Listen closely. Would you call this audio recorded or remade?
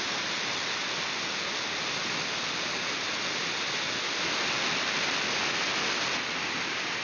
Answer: recorded